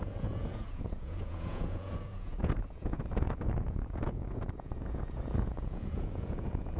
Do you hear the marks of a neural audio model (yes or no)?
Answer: yes